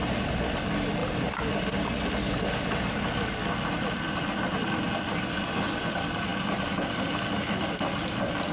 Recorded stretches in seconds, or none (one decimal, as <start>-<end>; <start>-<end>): 0.0-8.5